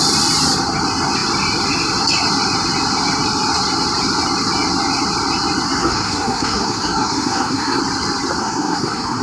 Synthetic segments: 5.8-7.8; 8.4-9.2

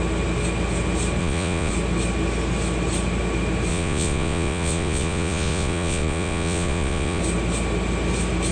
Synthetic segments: 1.2-1.7; 3.7-7.2

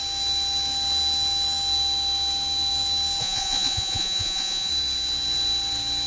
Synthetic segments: 3.2-4.7